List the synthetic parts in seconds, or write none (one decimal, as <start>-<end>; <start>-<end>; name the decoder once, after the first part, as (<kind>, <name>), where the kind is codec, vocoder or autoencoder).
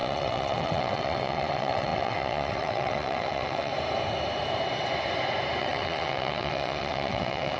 0.0-3.7 (vocoder, WaveNeXt); 5.6-7.6